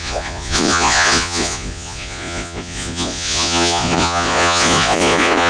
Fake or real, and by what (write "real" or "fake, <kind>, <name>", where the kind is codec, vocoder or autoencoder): fake, vocoder, Vocos